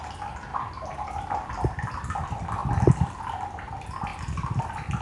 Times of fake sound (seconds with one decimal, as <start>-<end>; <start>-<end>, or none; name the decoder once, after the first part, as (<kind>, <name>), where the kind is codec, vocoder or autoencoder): 0.5-1.5 (vocoder, BigVGAN v2); 4.1-4.6

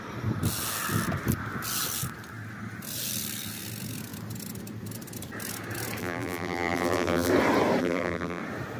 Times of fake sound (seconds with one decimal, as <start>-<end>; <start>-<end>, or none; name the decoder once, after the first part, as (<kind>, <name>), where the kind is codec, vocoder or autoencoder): 6.0-7.3 (vocoder, BigVGAN v2); 7.8-8.4

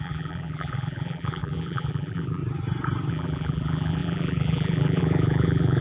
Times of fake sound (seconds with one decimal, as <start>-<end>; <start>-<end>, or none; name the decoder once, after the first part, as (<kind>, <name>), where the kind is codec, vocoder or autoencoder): 0.0-2.4 (vocoder, BigVGAN v2); 3.1-5.8

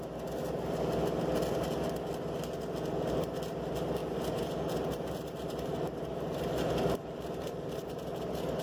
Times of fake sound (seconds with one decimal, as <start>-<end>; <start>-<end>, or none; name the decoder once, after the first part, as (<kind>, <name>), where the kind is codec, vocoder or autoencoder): 4.0-8.2 (vocoder, BigVGAN v2)

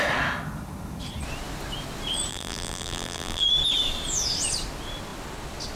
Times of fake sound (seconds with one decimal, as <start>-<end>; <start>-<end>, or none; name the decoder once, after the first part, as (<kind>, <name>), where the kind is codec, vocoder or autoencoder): 2.3-3.4 (vocoder, BigVGAN v2)